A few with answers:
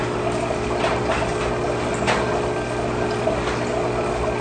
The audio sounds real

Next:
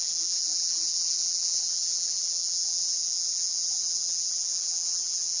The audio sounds fake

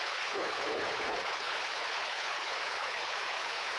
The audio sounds fake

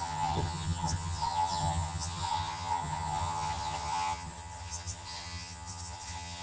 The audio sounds fake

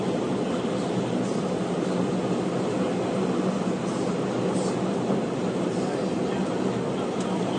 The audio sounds real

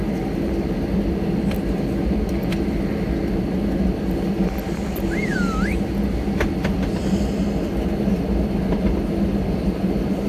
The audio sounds real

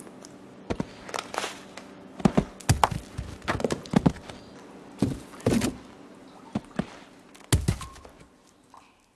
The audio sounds real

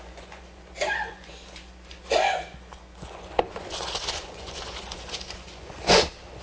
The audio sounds fake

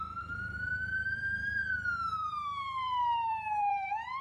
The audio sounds fake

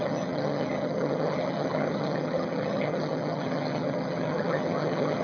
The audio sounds fake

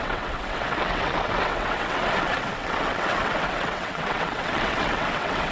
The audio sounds fake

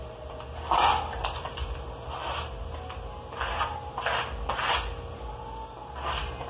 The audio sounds real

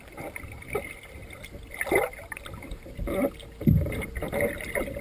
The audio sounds fake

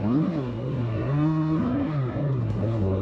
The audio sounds fake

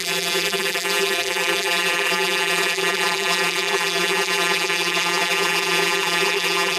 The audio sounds fake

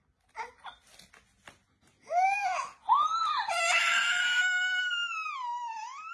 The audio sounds real